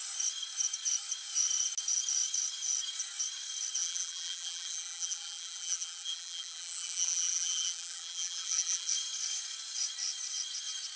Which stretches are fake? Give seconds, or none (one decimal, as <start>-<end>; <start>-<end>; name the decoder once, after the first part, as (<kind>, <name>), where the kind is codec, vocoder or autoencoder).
3.8-8.9 (vocoder, BigVGAN v2)